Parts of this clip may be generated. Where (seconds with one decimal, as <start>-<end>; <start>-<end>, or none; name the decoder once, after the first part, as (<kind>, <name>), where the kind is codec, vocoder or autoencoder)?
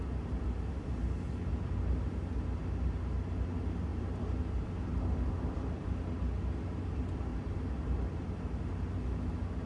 3.9-6.3 (vocoder, BigVGAN v2); 7.3-8.7